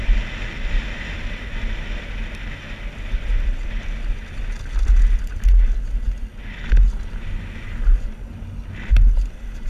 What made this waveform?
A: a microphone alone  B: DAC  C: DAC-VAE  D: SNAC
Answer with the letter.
A